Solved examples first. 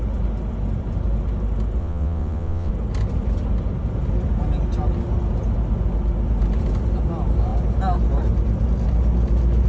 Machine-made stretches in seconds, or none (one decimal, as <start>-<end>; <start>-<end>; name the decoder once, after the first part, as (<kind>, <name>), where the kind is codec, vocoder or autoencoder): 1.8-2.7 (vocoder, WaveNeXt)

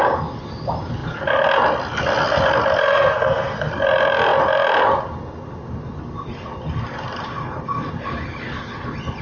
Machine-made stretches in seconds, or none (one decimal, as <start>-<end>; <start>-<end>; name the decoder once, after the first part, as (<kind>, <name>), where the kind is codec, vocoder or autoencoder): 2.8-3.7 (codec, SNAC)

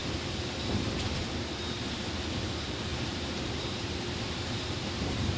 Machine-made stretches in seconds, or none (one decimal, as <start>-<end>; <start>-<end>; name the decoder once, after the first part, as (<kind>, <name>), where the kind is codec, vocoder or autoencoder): 2.9-4.0 (vocoder, BigVGAN v2)

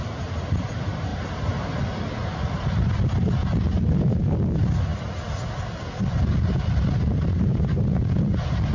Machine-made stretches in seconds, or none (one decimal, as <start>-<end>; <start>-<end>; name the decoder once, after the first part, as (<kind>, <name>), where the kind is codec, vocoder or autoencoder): none